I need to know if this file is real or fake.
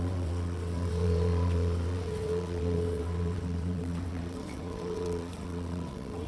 fake